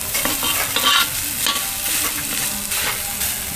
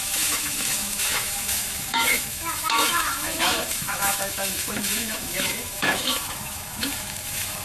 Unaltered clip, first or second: first